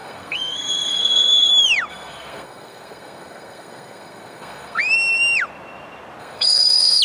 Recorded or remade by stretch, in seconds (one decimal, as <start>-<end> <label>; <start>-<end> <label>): 0.0-1.5 remade; 1.5-1.9 recorded; 1.9-4.8 remade; 4.8-6.2 recorded; 6.2-7.0 remade